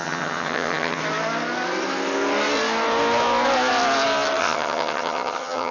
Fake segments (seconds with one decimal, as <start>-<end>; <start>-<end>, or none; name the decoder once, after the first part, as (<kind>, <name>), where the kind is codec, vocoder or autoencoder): 0.0-1.0 (vocoder, HiFi-GAN); 4.4-5.7